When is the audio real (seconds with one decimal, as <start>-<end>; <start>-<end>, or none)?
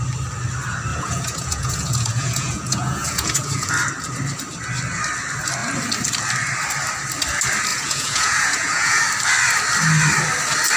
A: 0.0-0.9; 3.7-7.7; 9.0-10.8